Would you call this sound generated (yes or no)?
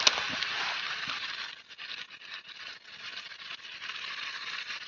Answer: no